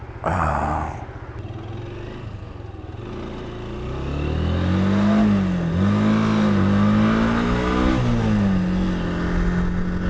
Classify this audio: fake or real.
real